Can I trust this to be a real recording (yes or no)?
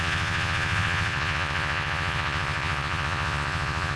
no